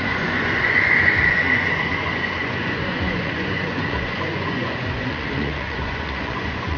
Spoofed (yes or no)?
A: yes